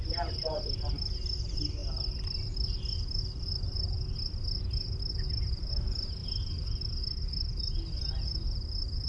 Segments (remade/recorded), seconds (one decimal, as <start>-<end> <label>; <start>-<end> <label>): 0.0-6.2 recorded; 6.2-6.8 remade; 6.8-9.1 recorded